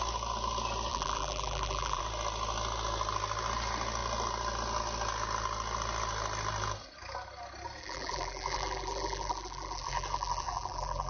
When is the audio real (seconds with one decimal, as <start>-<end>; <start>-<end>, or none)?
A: 0.0-0.9; 2.0-7.8